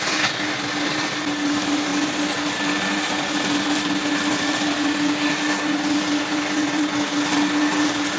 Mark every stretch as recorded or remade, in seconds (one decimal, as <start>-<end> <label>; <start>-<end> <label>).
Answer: 0.0-8.2 recorded